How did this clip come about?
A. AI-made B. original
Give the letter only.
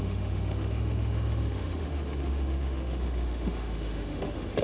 A